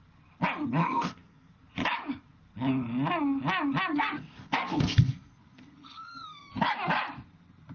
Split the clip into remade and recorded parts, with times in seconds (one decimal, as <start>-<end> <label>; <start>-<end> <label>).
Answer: 0.0-0.8 recorded; 0.8-1.5 remade; 1.5-3.9 recorded; 3.9-6.5 remade; 6.5-7.7 recorded